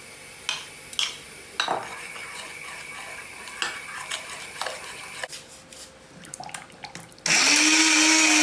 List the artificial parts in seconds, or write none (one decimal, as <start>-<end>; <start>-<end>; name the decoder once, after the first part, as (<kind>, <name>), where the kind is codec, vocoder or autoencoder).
1.9-2.7 (vocoder, Vocos)